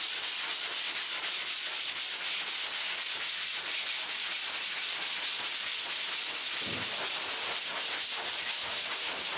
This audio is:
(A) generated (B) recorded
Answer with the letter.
B